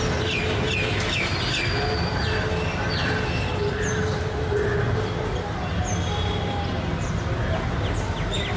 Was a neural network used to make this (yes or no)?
no